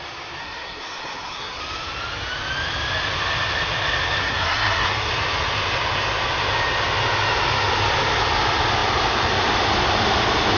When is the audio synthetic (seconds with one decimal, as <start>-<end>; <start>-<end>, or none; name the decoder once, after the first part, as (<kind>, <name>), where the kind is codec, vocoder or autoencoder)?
0.4-1.6 (codec, SNAC); 4.2-5.1